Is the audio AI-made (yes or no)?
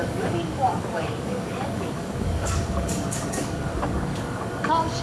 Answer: yes